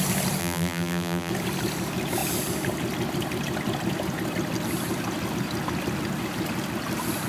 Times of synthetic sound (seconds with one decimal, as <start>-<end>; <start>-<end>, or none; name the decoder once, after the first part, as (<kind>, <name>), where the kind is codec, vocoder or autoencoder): 0.4-1.3 (vocoder, BigVGAN v2)